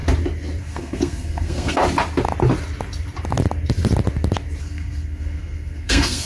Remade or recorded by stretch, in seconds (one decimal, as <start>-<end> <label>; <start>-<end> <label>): 0.0-0.6 recorded; 0.6-1.8 remade; 1.8-4.6 recorded; 4.6-6.3 remade